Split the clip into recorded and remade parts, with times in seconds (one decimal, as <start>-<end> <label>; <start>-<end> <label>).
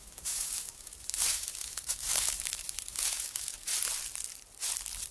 0.0-3.7 remade; 3.7-5.1 recorded